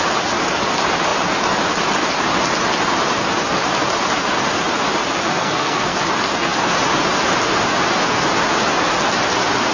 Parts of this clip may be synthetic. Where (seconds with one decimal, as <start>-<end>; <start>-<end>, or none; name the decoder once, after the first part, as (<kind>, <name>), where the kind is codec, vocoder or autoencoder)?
5.3-6.0 (codec, SNAC)